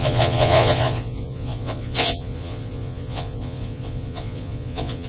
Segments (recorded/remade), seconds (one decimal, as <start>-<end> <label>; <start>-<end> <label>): 0.0-5.1 remade